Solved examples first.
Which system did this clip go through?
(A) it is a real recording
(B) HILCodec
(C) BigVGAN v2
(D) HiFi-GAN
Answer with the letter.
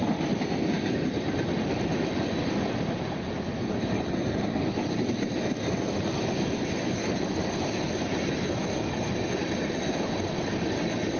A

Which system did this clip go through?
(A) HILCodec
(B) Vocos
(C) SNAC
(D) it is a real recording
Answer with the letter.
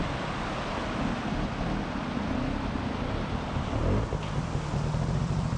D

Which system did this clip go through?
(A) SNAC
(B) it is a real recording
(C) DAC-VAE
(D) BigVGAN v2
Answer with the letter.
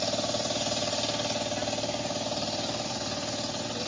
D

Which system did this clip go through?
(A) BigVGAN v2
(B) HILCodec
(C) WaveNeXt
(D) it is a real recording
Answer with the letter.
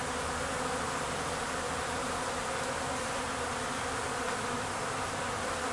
D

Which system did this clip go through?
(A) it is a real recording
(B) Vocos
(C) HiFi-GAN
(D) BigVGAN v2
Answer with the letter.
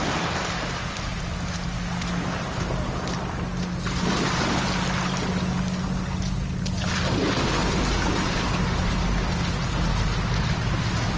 A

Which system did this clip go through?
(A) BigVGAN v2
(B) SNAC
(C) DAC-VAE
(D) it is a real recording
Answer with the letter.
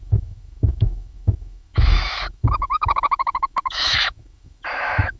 C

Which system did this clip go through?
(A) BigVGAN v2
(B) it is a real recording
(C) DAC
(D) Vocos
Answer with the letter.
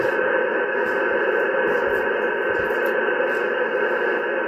B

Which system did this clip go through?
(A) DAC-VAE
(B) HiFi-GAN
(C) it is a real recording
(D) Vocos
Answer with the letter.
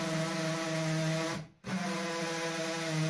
C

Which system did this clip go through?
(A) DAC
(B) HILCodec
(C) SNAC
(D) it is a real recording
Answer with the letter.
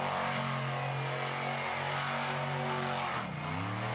D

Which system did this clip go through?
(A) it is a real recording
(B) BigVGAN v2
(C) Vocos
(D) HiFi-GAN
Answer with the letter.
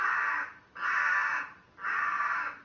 A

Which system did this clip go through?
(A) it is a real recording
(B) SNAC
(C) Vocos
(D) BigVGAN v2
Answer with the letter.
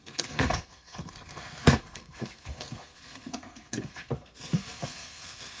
B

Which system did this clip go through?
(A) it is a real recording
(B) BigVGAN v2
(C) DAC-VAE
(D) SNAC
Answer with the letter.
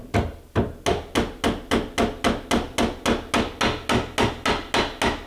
A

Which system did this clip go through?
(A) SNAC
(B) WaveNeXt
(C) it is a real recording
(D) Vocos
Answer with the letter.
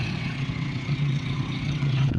B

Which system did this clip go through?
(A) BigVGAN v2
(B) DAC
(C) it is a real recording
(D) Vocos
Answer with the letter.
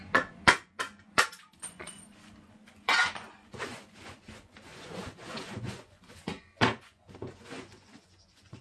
D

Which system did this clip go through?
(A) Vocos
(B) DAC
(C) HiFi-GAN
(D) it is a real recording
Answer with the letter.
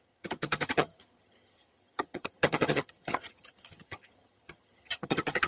C